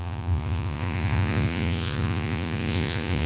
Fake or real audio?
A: fake